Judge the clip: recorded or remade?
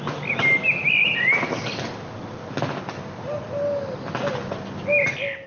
recorded